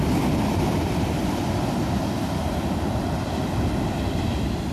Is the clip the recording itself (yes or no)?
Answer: no